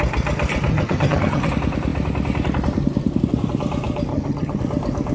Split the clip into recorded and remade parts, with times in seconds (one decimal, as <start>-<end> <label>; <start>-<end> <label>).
0.0-0.7 recorded; 0.7-1.5 remade; 1.5-4.1 recorded; 4.1-4.6 remade; 4.6-5.1 recorded